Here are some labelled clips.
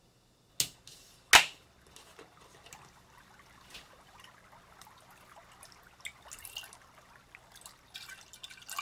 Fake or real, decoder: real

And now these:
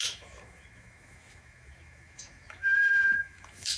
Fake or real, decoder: fake, autoencoder, DAC-VAE